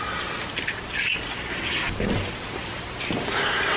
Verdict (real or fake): real